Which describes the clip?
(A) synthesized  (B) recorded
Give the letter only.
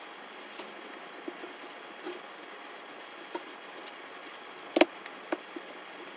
B